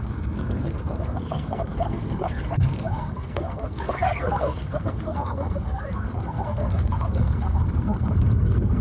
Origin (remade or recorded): remade